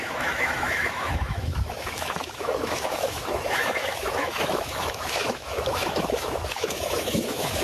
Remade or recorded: remade